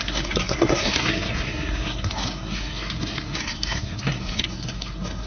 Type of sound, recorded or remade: remade